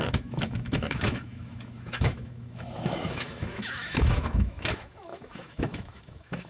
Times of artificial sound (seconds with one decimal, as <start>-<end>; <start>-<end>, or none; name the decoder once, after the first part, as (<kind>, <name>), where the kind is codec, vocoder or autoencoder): 0.0-6.5 (autoencoder, DAC-VAE)